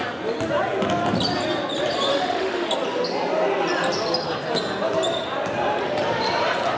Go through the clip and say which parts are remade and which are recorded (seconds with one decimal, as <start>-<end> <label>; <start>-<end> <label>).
0.0-2.1 recorded; 2.1-2.7 remade; 2.7-6.8 recorded